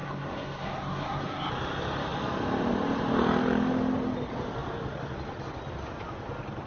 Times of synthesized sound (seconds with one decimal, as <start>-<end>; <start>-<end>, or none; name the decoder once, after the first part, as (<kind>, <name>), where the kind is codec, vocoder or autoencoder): 0.0-1.5 (codec, SNAC)